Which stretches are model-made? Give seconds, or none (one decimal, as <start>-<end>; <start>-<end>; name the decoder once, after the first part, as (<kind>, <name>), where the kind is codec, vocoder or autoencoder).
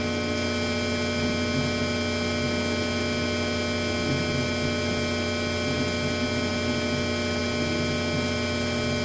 none